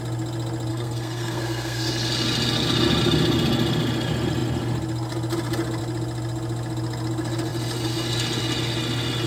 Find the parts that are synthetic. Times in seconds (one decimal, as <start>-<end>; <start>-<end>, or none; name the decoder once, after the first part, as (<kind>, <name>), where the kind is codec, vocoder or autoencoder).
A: 0.7-1.9 (codec, SNAC)